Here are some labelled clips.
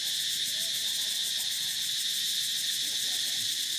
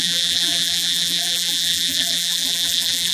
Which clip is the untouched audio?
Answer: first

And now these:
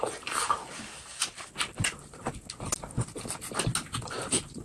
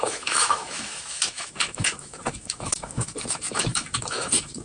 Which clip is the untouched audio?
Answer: first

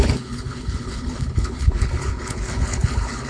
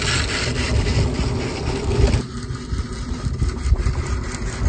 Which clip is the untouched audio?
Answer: second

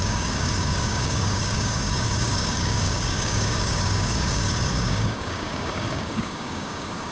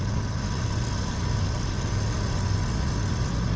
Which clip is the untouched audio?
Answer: second